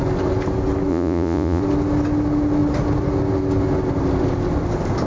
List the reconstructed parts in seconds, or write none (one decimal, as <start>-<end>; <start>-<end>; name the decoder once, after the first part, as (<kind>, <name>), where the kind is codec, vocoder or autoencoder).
0.9-1.6 (vocoder, Vocos)